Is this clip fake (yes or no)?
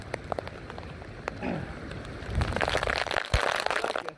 no